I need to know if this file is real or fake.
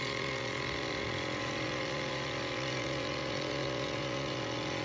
fake